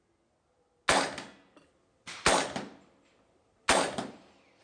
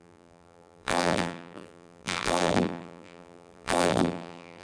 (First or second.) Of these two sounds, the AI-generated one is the second